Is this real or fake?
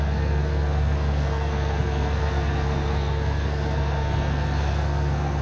fake